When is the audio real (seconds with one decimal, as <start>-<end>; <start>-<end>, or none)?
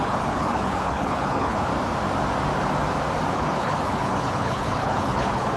1.7-3.3